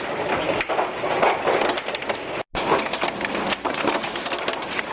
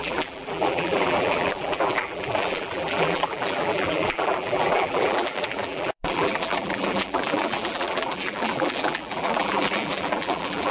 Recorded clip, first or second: first